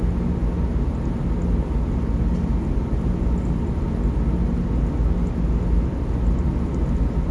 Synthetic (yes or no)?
no